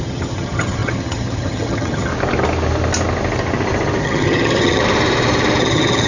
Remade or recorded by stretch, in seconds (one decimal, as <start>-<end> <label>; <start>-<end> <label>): 0.0-2.1 remade; 2.1-4.0 recorded; 4.0-4.8 remade; 4.8-5.6 recorded; 5.6-6.1 remade